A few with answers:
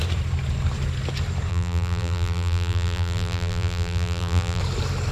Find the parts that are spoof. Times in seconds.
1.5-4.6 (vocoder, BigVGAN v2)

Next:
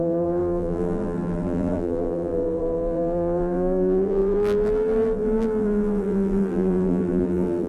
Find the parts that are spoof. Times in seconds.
0.0-7.7 (vocoder, BigVGAN v2)

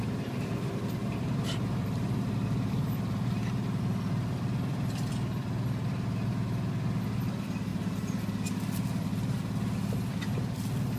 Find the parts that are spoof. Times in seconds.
1.0-5.1 (vocoder, BigVGAN v2); 7.7-8.2

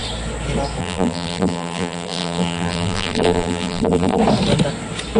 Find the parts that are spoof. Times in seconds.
0.8-4.2 (vocoder, BigVGAN v2)

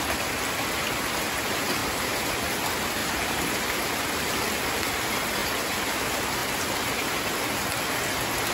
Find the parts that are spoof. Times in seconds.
1.8-2.3 (vocoder, BigVGAN v2); 3.0-4.1; 5.4-6.0

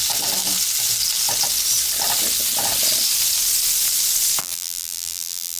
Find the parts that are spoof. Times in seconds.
4.4-5.6 (vocoder, BigVGAN v2)

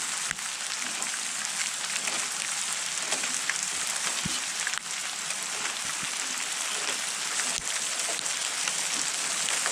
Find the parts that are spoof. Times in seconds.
1.6-4.3 (vocoder, BigVGAN v2)

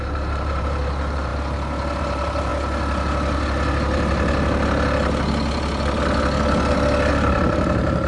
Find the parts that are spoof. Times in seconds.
0.0-1.3 (vocoder, BigVGAN v2); 2.0-2.5; 7.1-8.1